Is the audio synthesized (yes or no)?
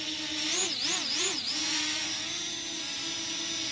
no